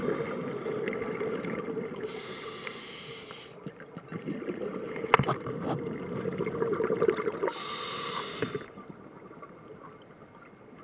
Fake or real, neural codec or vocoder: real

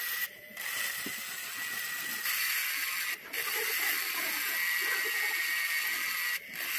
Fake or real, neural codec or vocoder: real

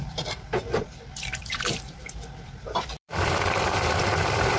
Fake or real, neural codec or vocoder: fake, vocoder, BigVGAN v2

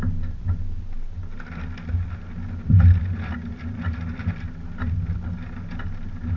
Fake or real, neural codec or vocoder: real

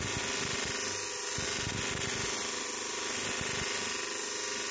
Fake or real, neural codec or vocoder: real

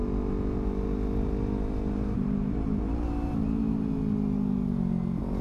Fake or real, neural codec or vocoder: real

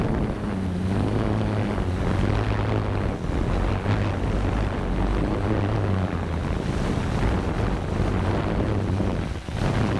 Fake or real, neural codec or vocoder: real